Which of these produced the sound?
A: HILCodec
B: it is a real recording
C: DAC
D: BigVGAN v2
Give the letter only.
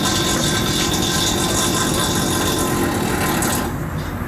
B